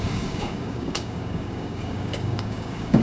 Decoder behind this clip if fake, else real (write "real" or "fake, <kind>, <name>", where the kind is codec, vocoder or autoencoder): fake, codec, DAC